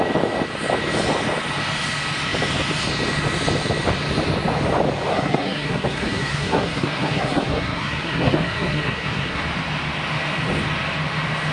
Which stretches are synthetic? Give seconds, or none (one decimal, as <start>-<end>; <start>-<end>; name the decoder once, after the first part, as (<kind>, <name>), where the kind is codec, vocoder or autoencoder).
5.1-9.4 (codec, SNAC)